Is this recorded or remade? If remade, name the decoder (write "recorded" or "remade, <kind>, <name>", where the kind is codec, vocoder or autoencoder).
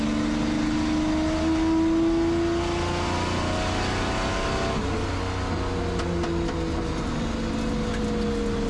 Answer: recorded